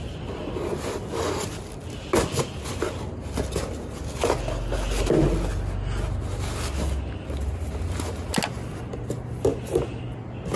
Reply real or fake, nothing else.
real